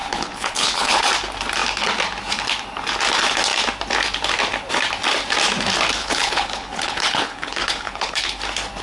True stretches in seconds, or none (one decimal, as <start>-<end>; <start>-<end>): 1.0-6.0; 8.4-8.8